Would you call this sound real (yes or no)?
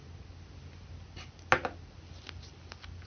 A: yes